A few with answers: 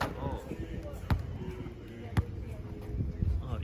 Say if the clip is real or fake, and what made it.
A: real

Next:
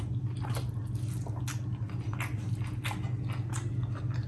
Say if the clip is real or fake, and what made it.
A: real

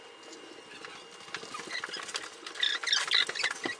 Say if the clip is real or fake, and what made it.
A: real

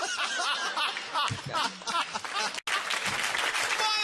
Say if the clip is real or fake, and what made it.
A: real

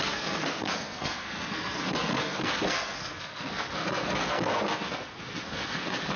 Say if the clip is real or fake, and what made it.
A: fake, codec, SNAC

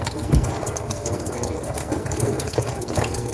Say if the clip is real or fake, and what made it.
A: fake, codec, SNAC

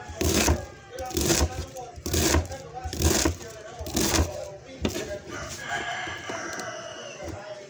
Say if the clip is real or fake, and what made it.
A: real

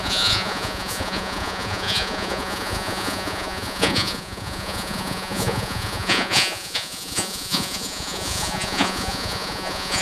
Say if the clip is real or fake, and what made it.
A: fake, vocoder, Vocos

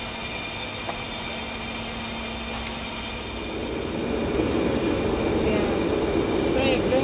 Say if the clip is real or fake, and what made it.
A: real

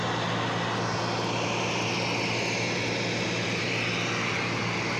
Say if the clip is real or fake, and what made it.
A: real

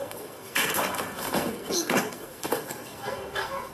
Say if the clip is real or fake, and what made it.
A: fake, codec, SNAC